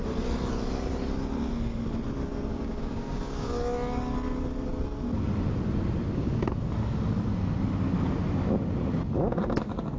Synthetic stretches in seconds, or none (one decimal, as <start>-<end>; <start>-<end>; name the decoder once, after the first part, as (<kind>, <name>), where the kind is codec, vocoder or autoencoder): 2.5-3.5 (codec, DAC)